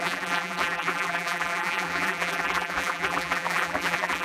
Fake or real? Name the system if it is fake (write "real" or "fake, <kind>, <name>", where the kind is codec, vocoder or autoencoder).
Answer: fake, vocoder, BigVGAN v2